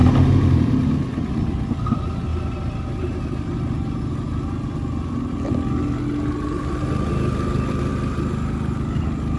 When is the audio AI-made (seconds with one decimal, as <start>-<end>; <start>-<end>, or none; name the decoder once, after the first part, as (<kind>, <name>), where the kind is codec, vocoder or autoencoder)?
none